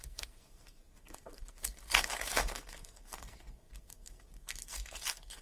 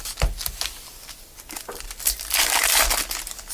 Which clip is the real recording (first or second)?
second